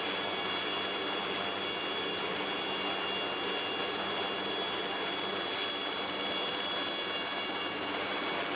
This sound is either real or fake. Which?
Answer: real